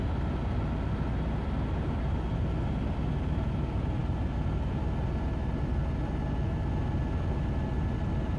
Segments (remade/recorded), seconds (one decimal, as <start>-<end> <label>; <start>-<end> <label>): 0.0-8.4 recorded